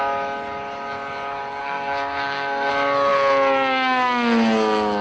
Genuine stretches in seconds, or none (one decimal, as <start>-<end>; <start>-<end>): 0.0-1.6; 2.7-5.0